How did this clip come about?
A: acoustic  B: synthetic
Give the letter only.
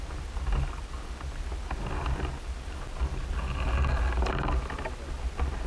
A